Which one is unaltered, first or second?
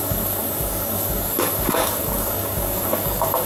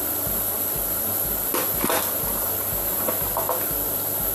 second